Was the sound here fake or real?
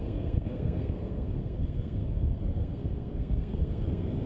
fake